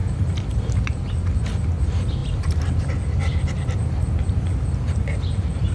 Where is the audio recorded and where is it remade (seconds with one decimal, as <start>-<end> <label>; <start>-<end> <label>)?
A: 0.0-0.8 remade; 0.8-2.2 recorded; 2.2-2.8 remade; 2.8-5.7 recorded